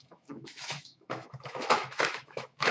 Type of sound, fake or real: fake